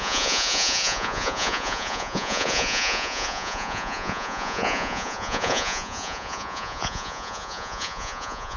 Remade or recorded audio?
remade